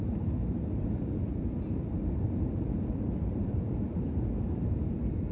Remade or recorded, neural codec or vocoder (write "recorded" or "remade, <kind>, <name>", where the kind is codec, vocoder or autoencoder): remade, vocoder, BigVGAN v2